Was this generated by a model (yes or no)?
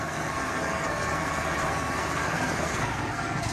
yes